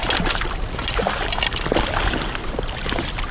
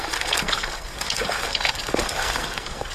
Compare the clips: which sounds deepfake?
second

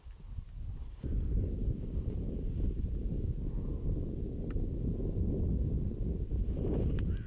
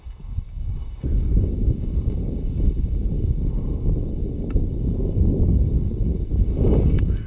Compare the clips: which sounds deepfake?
second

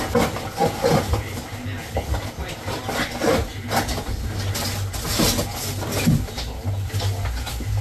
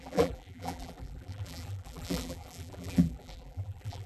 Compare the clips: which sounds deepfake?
second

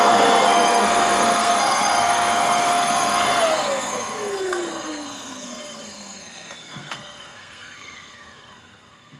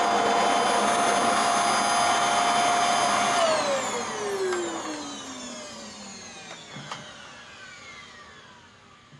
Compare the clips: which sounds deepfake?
first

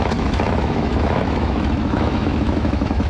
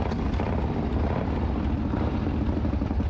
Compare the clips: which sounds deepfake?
first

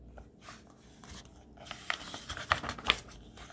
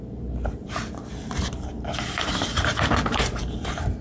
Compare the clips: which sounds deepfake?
second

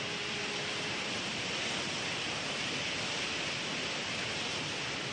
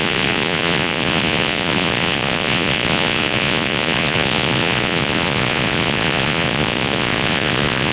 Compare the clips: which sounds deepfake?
second